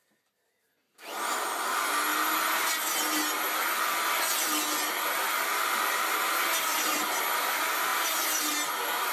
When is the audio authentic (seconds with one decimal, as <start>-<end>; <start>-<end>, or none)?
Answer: 0.0-6.7; 7.2-7.9; 8.5-9.1